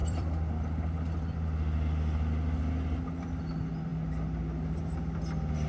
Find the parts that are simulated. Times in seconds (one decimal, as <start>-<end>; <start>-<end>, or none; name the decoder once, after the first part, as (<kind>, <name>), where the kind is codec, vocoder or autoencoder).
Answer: 0.0-3.4 (vocoder, BigVGAN v2)